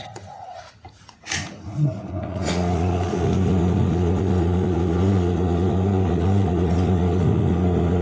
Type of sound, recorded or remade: remade